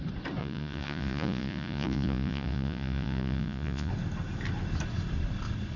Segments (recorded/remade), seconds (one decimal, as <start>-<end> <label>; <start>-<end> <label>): 0.0-0.4 recorded; 0.4-3.9 remade; 3.9-5.8 recorded